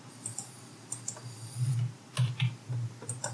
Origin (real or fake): real